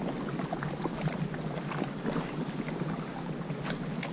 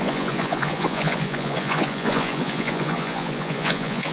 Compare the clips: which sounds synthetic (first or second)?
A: second